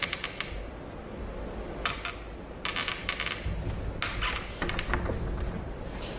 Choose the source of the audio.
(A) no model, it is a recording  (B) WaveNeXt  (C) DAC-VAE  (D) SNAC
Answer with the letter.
A